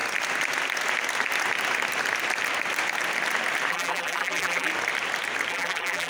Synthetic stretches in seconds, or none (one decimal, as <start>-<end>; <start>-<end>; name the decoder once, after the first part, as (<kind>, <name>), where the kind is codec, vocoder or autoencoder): 3.7-4.7 (vocoder, BigVGAN v2); 5.5-6.1